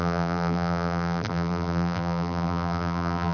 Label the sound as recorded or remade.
remade